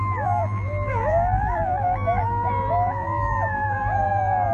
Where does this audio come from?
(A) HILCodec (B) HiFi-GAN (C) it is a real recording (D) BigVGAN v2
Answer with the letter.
D